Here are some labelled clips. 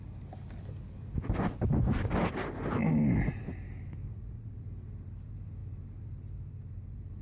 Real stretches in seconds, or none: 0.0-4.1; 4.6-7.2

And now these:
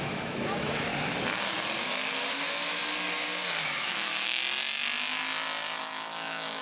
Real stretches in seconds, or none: 0.9-1.8; 2.8-3.6; 4.4-5.8

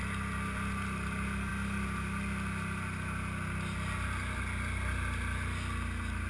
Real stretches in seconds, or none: 0.0-6.3